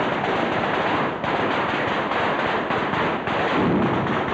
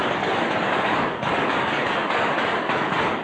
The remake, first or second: second